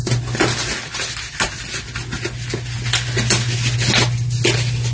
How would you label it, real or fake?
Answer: real